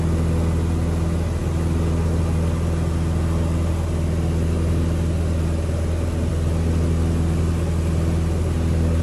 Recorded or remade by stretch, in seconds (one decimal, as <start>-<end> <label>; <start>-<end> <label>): 0.0-9.0 recorded